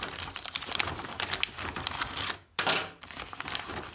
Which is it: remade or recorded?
recorded